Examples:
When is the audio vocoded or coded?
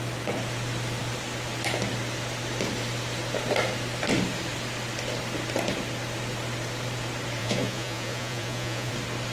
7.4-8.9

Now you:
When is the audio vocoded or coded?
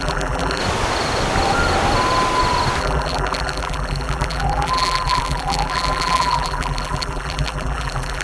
0.0-0.6; 2.8-8.2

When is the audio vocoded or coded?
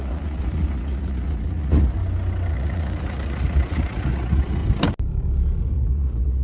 0.0-2.0; 2.5-4.6; 5.6-6.4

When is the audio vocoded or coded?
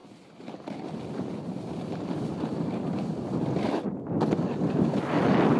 none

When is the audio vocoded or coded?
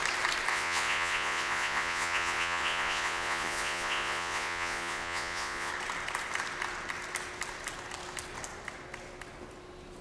0.5-5.7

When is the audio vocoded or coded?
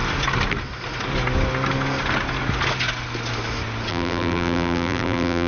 3.9-5.5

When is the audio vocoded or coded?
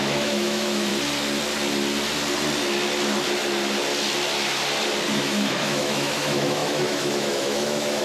0.0-0.9; 5.1-8.0